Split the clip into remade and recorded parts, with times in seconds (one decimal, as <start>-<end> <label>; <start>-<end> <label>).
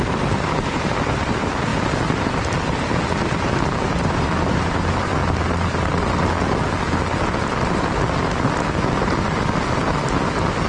0.0-1.7 remade; 1.7-3.4 recorded; 3.4-5.2 remade; 5.2-10.7 recorded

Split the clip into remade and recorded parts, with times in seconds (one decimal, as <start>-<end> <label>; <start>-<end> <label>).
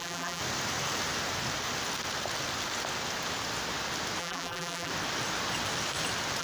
0.0-0.4 remade; 0.4-4.2 recorded; 4.2-4.9 remade; 4.9-6.4 recorded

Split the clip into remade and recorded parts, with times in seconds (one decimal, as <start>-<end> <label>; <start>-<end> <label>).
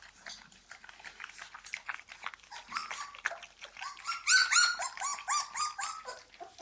0.0-6.6 recorded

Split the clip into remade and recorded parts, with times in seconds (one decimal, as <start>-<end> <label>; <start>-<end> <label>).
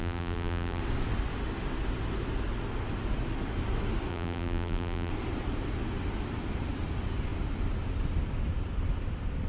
0.0-0.8 remade; 0.8-4.1 recorded; 4.1-5.1 remade; 5.1-9.5 recorded